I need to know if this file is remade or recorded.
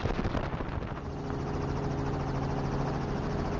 recorded